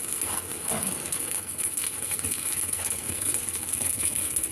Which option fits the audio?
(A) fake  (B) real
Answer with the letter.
A